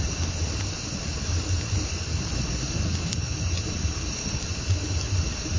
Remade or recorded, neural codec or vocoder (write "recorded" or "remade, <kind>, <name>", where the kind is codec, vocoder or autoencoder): recorded